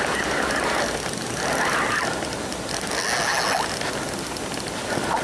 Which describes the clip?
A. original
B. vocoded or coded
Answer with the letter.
A